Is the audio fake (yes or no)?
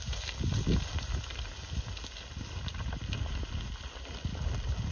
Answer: no